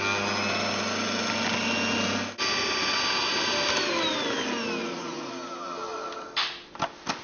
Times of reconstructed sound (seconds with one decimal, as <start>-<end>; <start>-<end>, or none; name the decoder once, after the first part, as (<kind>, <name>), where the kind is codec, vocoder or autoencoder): 4.8-5.3 (vocoder, Vocos)

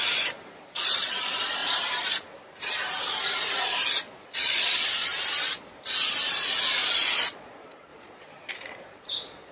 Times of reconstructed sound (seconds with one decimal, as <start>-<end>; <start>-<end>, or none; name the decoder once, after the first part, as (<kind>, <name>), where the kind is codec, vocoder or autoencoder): 0.0-1.6 (vocoder, Vocos); 3.9-5.1; 7.0-9.5

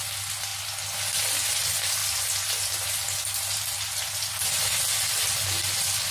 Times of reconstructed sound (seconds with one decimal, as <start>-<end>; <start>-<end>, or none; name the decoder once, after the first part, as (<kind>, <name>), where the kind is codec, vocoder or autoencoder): none